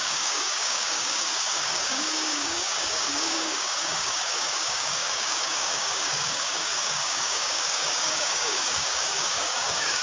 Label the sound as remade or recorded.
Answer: remade